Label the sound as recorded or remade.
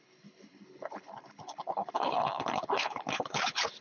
remade